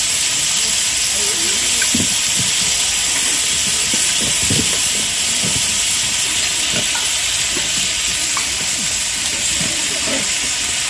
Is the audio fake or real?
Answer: real